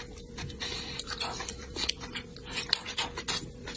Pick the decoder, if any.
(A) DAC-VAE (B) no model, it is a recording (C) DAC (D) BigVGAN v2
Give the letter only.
B